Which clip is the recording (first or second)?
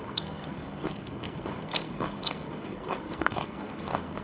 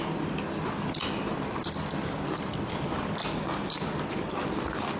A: second